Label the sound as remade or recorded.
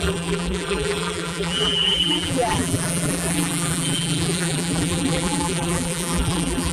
remade